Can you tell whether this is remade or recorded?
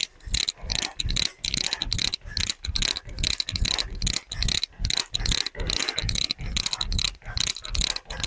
recorded